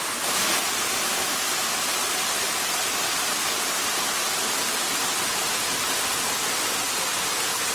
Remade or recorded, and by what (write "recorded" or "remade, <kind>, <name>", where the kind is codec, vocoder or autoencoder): recorded